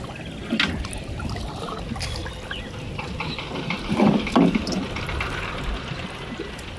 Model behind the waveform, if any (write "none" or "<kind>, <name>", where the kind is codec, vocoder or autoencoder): none